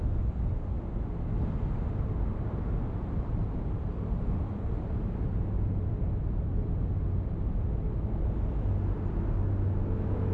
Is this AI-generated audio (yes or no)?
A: no